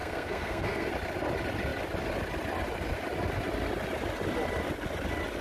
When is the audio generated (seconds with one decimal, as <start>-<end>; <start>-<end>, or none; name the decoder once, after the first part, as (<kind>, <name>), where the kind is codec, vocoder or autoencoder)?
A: 0.0-0.9 (codec, SNAC)